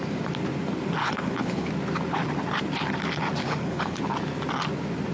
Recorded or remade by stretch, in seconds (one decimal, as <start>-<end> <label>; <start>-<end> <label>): 0.0-1.0 recorded; 1.0-1.7 remade; 1.7-3.4 recorded; 3.4-4.0 remade; 4.0-5.1 recorded